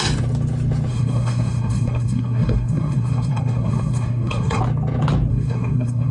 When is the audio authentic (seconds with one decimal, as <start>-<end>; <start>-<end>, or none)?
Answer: 0.0-0.9; 4.6-5.3